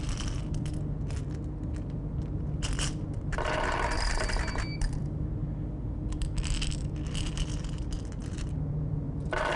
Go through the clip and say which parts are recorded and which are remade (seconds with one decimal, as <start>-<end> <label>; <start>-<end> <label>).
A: 0.0-0.7 remade; 0.7-3.2 recorded; 3.2-5.4 remade; 5.4-6.1 recorded; 6.1-9.6 remade